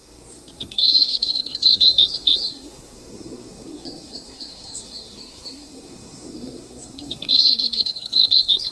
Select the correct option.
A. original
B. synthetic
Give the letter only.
B